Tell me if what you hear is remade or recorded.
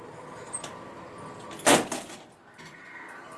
recorded